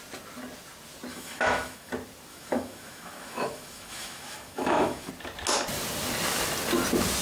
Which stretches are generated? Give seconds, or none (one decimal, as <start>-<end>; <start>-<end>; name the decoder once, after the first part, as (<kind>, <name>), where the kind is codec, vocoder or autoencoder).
1.1-1.9 (autoencoder, DAC-VAE); 2.3-5.1